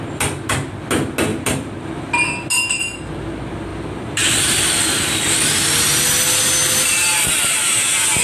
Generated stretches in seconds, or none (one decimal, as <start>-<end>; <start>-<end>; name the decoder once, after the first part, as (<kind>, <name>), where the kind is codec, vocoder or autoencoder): 1.3-2.2 (vocoder, BigVGAN v2); 3.7-5.6